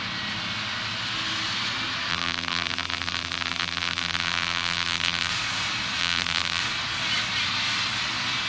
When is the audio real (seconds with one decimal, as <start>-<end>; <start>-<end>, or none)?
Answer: 0.0-2.1; 5.3-6.0; 6.6-8.5